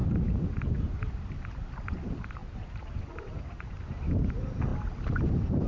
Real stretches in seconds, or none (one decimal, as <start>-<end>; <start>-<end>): 0.6-2.4; 3.7-5.7